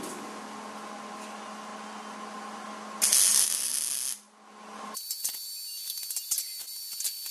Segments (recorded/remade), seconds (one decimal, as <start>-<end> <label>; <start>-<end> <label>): 0.0-7.3 recorded